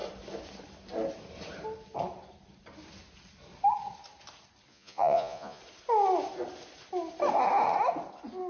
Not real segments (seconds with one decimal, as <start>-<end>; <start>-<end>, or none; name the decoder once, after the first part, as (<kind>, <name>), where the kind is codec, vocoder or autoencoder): 4.7-5.6 (vocoder, Vocos)